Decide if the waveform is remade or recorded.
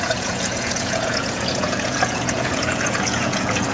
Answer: remade